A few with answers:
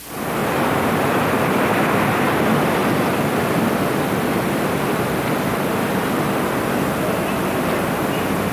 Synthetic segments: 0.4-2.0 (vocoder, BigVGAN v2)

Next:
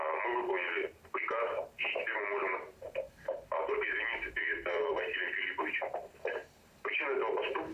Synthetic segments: 0.6-5.2 (vocoder, BigVGAN v2); 6.4-6.9

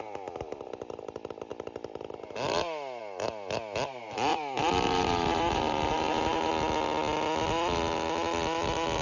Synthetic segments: 4.3-6.5 (vocoder, BigVGAN v2)

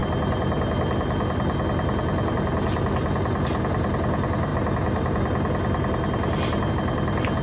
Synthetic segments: none

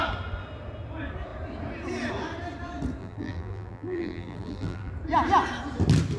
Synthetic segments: 3.0-4.9 (vocoder, BigVGAN v2)

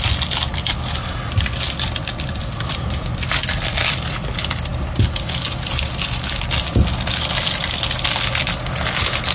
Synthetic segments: 0.5-3.7 (vocoder, BigVGAN v2)

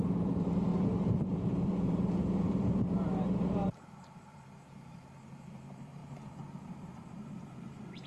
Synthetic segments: 0.0-8.1 (vocoder, BigVGAN v2)